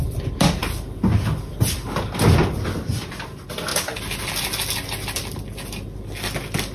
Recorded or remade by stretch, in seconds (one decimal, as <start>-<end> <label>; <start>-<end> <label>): 0.0-6.7 recorded